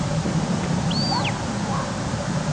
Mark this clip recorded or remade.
recorded